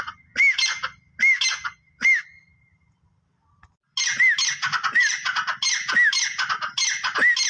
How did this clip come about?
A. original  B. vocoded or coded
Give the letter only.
A